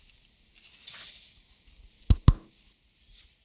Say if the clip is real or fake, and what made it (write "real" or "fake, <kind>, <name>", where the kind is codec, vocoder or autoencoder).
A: real